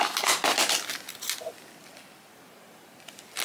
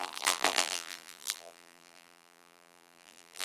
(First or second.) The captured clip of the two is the first